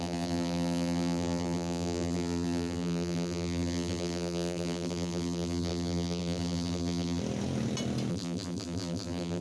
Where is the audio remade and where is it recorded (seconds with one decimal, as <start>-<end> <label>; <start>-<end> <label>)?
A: 0.0-7.2 remade; 7.2-8.1 recorded; 8.1-9.4 remade